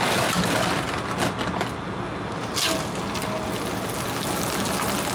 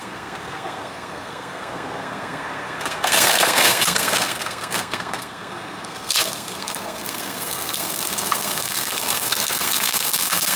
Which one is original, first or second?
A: first